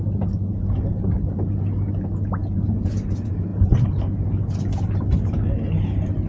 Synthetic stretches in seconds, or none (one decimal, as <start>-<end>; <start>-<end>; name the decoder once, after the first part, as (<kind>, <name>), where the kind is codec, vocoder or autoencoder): none